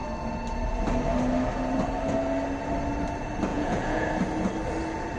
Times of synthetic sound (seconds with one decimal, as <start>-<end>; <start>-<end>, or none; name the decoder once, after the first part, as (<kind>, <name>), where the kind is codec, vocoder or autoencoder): 3.5-4.1 (vocoder, Vocos)